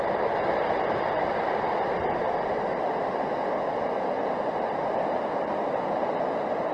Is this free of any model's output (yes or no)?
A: yes